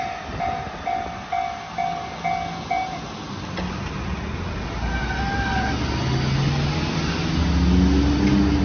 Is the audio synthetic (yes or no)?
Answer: no